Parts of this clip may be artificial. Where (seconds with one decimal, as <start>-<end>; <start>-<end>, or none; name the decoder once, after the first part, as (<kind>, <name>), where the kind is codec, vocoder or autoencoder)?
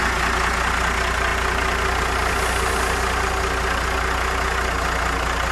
none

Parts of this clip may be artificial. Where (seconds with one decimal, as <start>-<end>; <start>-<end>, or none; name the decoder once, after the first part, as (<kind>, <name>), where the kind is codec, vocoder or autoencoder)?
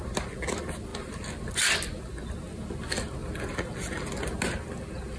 none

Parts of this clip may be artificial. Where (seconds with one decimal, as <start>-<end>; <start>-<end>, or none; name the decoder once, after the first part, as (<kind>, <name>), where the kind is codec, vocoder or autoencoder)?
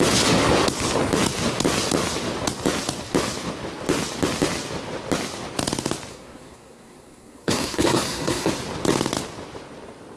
6.1-8.5 (codec, SNAC)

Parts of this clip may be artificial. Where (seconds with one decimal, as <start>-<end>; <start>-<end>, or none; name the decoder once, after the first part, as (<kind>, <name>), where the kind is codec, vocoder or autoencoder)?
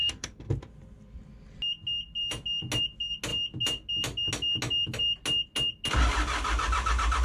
0.0-0.5 (codec, SNAC)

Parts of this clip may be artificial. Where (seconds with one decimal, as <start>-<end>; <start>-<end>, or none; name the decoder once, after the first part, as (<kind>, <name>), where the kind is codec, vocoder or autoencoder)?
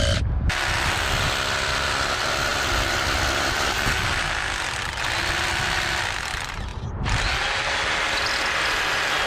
none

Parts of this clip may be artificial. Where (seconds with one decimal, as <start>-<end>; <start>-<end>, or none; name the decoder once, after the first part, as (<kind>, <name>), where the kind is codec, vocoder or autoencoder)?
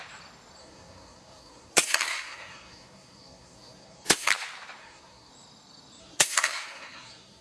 0.6-4.3 (codec, SNAC); 4.8-5.3; 6.0-7.4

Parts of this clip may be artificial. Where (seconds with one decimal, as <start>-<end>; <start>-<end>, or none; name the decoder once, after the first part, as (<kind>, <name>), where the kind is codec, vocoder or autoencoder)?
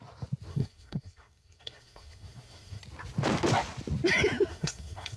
0.5-2.8 (codec, SNAC); 4.5-5.2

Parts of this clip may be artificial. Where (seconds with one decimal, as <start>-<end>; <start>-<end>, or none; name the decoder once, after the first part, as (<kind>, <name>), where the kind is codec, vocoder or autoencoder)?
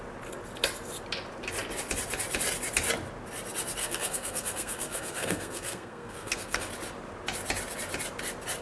3.8-6.7 (codec, SNAC)